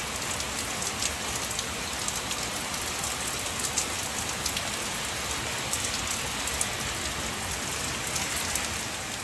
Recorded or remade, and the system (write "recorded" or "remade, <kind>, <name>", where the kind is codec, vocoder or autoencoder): recorded